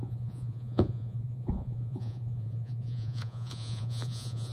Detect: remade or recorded remade